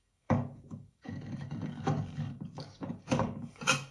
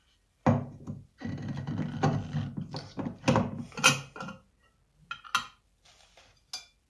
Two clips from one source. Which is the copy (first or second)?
first